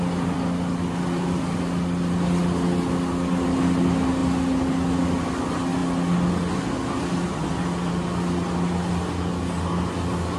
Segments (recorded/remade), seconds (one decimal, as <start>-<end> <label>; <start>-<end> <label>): 0.0-10.4 recorded